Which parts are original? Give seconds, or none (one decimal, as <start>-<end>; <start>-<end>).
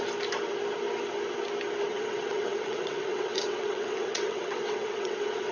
0.0-1.9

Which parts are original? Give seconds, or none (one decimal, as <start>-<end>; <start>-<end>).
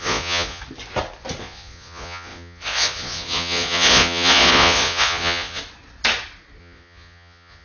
0.6-1.4; 5.6-6.6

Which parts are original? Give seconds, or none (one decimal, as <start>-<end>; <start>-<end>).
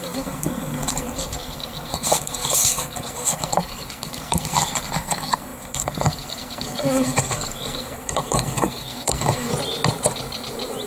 9.5-10.9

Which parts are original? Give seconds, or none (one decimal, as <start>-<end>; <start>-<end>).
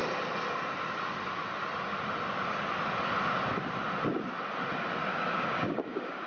0.0-5.1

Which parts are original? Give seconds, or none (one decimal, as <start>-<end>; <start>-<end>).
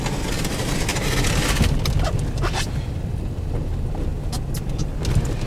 0.0-0.9; 3.2-5.5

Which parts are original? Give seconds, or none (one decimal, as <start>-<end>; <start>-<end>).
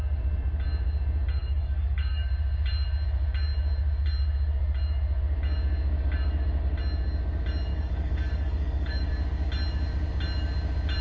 0.0-1.4; 2.3-7.7; 9.1-11.0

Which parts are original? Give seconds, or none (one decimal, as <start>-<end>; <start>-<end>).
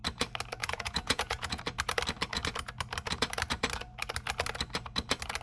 0.0-0.6; 1.6-5.4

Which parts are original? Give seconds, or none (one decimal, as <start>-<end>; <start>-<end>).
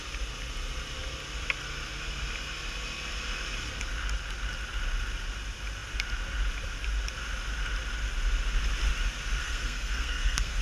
0.0-9.4